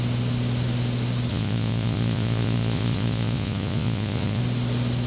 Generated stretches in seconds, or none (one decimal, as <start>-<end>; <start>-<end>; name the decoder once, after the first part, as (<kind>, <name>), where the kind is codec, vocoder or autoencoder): 1.3-4.4 (vocoder, Vocos)